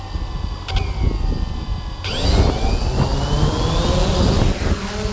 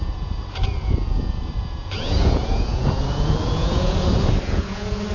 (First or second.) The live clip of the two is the first